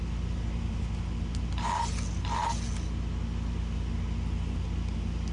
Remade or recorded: recorded